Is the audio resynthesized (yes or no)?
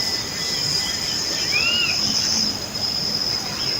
no